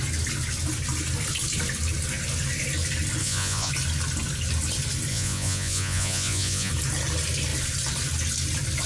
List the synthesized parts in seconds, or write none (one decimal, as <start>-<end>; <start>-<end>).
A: 3.2-3.7; 5.1-6.7